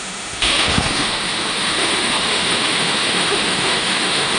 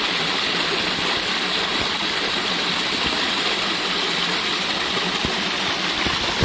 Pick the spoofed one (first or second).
first